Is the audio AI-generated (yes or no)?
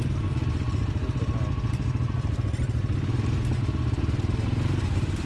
no